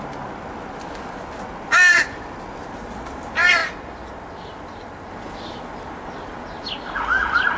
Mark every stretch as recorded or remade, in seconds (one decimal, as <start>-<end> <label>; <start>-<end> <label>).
0.0-7.6 recorded